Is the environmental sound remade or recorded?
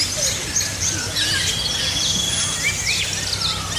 recorded